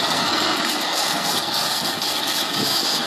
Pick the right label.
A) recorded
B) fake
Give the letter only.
B